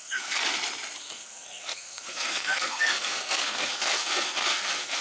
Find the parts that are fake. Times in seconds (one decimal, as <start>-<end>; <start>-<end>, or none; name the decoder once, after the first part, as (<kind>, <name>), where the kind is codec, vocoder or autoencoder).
0.0-0.4 (codec, SNAC); 1.0-5.0